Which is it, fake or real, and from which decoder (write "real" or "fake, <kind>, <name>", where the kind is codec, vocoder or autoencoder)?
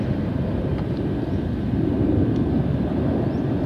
fake, vocoder, BigVGAN v2